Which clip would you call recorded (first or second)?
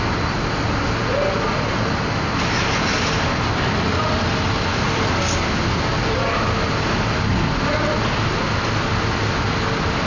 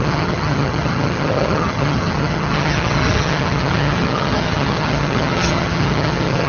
first